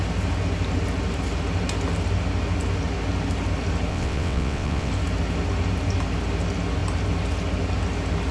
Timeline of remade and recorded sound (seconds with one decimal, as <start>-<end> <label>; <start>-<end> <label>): 0.0-3.9 recorded; 3.9-4.9 remade; 4.9-8.3 recorded